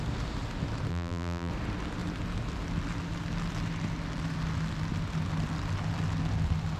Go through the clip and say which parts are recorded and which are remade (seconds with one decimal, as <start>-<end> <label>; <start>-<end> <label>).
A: 0.0-0.9 recorded; 0.9-1.5 remade; 1.5-6.8 recorded